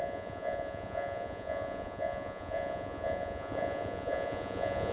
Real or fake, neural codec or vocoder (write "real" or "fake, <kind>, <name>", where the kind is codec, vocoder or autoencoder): fake, vocoder, Vocos